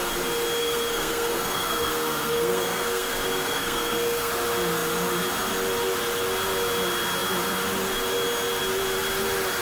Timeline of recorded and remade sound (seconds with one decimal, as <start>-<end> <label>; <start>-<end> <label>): 0.0-0.6 recorded; 0.6-4.3 remade; 4.3-9.6 recorded